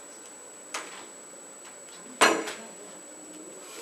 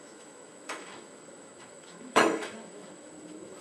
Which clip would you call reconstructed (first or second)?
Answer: second